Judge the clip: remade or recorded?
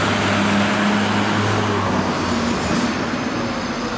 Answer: recorded